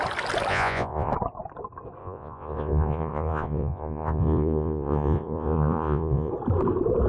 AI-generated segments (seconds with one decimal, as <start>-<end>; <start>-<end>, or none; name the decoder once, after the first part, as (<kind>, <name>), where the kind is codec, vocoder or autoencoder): 0.5-1.1 (vocoder, Vocos); 2.0-6.3